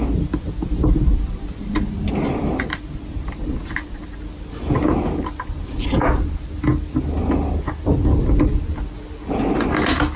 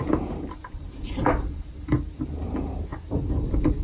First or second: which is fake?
second